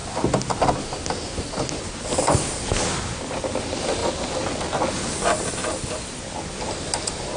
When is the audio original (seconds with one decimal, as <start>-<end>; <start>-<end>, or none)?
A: 0.0-7.4